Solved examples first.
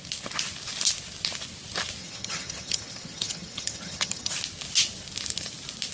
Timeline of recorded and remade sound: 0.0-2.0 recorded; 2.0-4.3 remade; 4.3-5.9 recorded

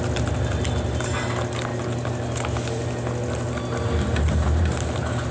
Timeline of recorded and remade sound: 0.0-5.3 recorded

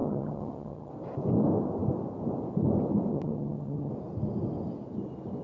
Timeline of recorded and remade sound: 0.0-0.9 remade; 0.9-3.1 recorded; 3.1-3.9 remade; 3.9-5.4 recorded

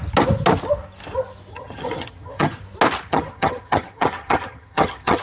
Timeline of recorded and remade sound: 0.0-1.5 recorded; 1.5-2.6 remade; 2.6-3.1 recorded; 3.1-5.2 remade

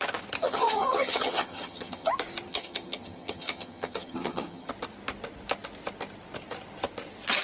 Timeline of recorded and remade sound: 0.0-0.4 recorded; 0.4-2.1 remade; 2.1-2.5 recorded; 2.5-4.7 remade; 4.7-7.4 recorded

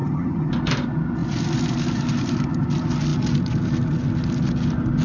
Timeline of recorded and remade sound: 0.0-0.5 remade; 0.5-5.0 recorded

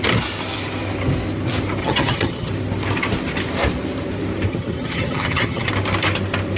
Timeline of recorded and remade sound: 0.0-1.8 recorded; 1.8-2.5 remade; 2.5-4.5 recorded; 4.5-5.7 remade; 5.7-6.6 recorded